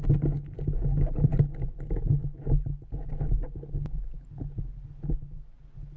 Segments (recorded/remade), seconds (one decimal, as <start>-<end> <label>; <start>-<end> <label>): 0.0-6.0 recorded